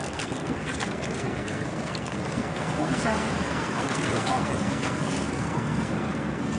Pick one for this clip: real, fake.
fake